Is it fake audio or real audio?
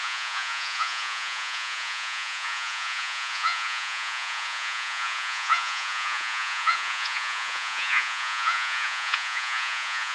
fake